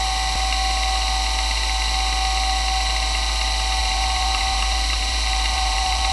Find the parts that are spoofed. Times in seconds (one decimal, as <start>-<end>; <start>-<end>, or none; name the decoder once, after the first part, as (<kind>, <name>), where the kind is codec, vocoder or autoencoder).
3.8-6.1 (vocoder, BigVGAN v2)